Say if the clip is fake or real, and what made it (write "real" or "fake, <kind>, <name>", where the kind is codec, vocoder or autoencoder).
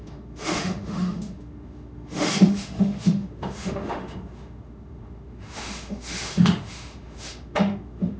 fake, autoencoder, DAC-VAE